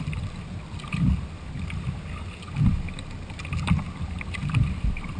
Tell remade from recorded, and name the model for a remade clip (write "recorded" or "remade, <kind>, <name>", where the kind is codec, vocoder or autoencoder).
recorded